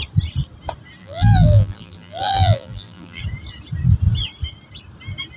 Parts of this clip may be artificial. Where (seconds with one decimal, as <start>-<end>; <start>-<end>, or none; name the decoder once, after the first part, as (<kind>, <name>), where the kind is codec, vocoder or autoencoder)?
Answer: 1.0-3.2 (vocoder, BigVGAN v2)